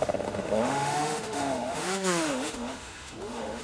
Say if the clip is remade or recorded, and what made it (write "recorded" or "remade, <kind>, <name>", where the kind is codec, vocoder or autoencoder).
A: remade, autoencoder, DAC-VAE